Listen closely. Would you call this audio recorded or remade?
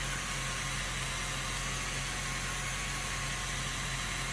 recorded